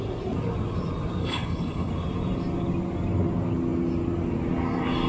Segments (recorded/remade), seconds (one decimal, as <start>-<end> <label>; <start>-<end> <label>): 0.0-1.2 recorded; 1.2-1.9 remade; 1.9-5.1 recorded